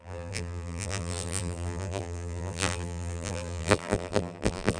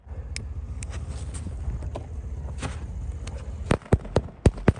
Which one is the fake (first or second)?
first